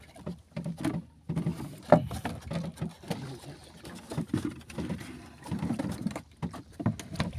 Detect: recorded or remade recorded